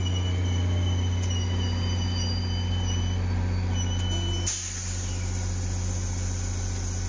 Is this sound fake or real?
real